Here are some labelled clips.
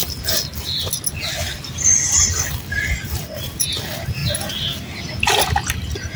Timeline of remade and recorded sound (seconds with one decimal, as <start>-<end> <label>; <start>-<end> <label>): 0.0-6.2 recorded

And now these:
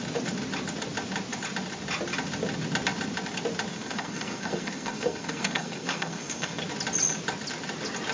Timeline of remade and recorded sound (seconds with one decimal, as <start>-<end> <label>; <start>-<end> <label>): 0.0-3.7 recorded; 3.7-6.6 remade; 6.6-8.1 recorded

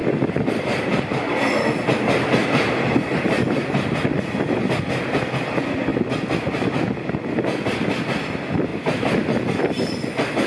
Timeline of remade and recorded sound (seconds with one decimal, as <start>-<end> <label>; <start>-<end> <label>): 0.0-1.3 remade; 1.3-2.4 recorded; 2.4-4.3 remade; 4.3-8.7 recorded; 8.7-10.1 remade; 10.1-10.5 recorded

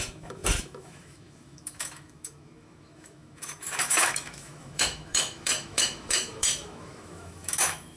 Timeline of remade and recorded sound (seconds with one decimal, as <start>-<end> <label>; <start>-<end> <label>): 0.0-8.0 remade